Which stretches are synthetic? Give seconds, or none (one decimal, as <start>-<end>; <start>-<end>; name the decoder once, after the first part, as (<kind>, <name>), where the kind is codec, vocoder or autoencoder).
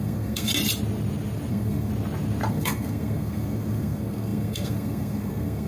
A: 0.0-0.5 (codec, SNAC); 1.5-1.9; 2.5-5.7